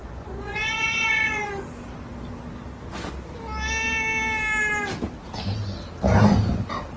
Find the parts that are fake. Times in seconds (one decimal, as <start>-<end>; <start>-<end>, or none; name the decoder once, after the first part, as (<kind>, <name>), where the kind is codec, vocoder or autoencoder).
0.0-1.5 (vocoder, Vocos)